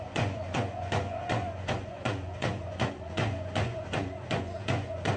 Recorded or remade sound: remade